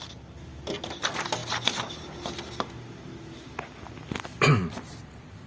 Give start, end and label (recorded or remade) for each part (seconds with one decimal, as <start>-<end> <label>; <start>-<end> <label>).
0.0-5.5 recorded